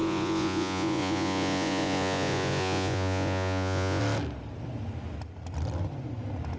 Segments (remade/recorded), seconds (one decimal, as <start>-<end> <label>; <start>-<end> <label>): 0.0-4.0 remade; 4.0-6.6 recorded